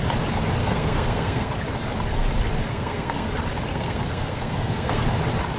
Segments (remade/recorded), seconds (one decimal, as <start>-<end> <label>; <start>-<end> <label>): 0.0-0.6 recorded; 0.6-1.5 remade; 1.5-2.7 recorded; 2.7-3.3 remade; 3.3-3.7 recorded; 3.7-5.0 remade; 5.0-5.6 recorded